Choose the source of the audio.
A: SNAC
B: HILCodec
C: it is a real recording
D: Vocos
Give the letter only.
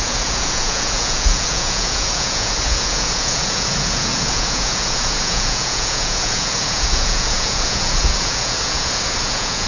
D